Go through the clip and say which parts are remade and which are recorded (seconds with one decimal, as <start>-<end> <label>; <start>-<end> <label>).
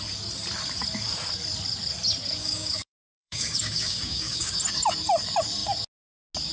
0.0-2.4 recorded; 2.4-4.6 remade; 4.6-6.5 recorded